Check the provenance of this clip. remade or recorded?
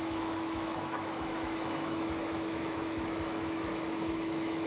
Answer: remade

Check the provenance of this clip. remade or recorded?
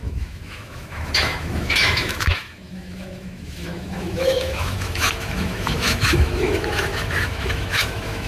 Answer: remade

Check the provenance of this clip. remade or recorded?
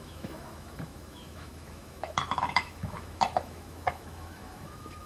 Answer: remade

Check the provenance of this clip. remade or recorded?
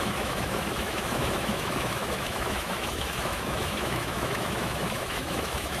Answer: remade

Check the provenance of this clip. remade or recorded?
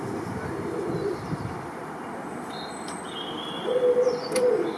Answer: recorded